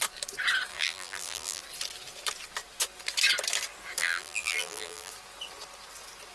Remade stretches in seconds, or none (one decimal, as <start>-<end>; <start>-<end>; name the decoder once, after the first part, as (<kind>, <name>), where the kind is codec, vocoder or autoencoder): 0.7-1.6 (vocoder, BigVGAN v2); 4.0-5.1